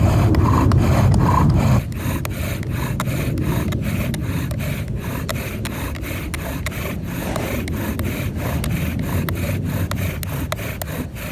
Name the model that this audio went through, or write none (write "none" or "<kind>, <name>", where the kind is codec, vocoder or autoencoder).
none